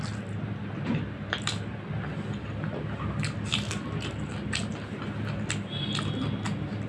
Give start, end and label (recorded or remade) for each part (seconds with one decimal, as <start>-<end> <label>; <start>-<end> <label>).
0.0-6.9 recorded